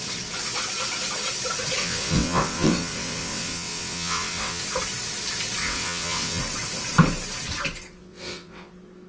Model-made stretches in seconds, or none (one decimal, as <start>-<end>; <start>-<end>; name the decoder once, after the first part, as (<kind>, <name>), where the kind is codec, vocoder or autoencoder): 1.8-4.6 (vocoder, WaveNeXt); 5.6-6.4; 8.0-8.7